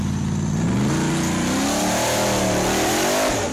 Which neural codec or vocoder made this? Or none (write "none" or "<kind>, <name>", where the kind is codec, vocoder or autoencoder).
none